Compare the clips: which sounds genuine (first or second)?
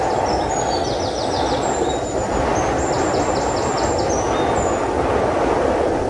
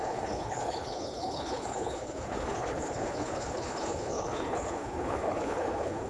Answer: first